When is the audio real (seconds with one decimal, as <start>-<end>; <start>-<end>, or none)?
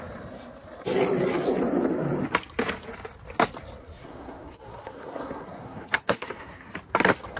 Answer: 0.0-3.8; 6.7-7.4